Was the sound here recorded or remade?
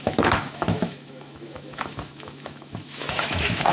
remade